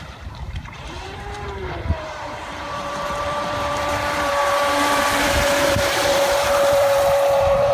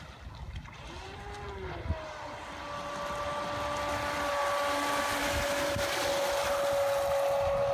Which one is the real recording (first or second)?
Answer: second